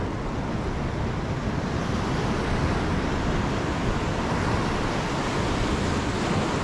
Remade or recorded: recorded